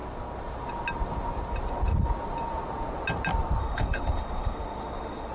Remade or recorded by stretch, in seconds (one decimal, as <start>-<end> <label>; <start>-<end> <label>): 0.0-3.6 recorded; 3.6-5.3 remade